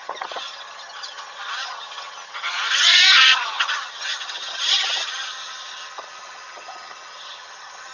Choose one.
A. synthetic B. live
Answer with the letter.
A